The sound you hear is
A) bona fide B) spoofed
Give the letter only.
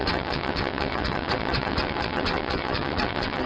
B